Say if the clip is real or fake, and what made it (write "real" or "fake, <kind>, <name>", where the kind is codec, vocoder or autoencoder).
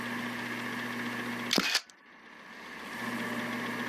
real